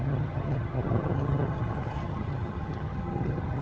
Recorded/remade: remade